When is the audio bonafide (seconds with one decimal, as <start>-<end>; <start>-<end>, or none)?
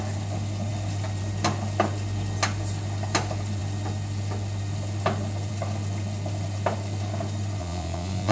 0.0-7.6